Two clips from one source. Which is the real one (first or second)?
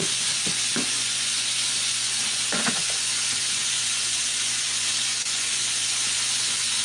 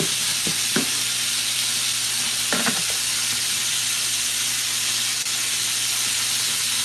second